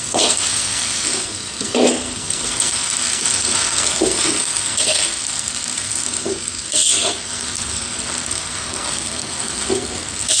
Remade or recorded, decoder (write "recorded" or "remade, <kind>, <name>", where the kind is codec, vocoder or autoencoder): remade, codec, SNAC